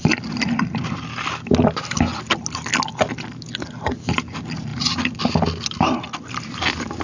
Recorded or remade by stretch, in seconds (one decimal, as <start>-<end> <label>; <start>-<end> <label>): 0.0-7.0 recorded